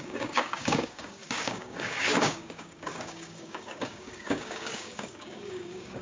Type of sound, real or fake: fake